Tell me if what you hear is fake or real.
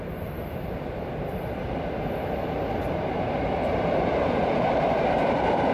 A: fake